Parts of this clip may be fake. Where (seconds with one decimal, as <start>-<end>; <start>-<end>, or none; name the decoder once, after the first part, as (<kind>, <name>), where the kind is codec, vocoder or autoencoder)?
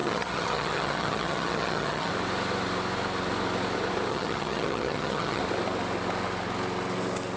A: 0.0-2.1 (vocoder, HiFi-GAN); 4.1-5.4